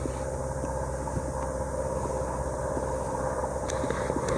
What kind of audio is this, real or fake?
real